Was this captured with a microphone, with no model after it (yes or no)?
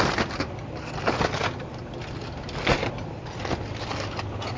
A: yes